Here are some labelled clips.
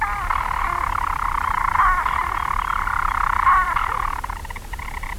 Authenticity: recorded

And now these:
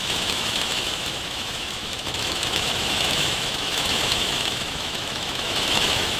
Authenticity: remade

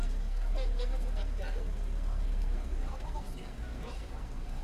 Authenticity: remade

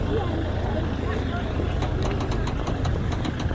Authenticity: recorded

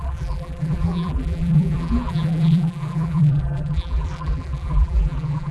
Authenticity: remade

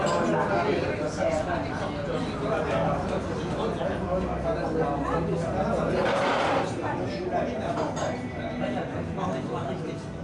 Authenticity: recorded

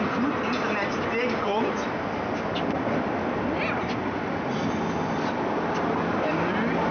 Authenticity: recorded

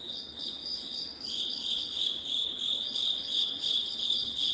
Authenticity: remade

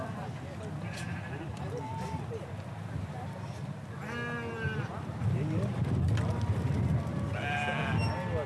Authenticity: recorded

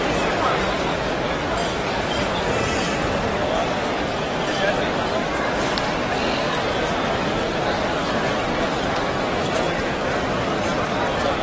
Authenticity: recorded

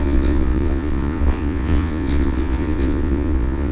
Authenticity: remade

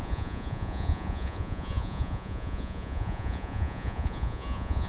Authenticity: remade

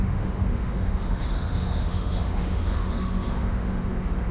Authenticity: remade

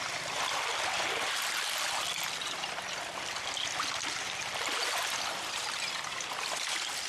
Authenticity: recorded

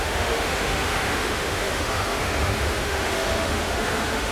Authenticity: remade